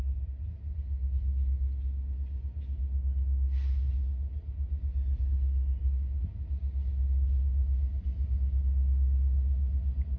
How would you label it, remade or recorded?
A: recorded